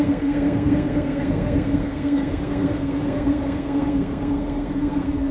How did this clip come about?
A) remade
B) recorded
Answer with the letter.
A